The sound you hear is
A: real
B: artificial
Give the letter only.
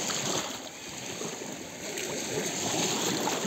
A